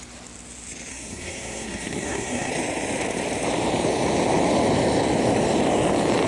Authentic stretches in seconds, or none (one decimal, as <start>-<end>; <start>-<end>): 0.0-0.9; 2.5-6.3